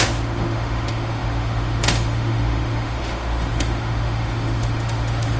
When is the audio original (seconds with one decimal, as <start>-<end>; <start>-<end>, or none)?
none